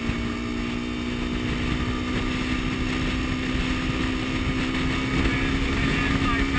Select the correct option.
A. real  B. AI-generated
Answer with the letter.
A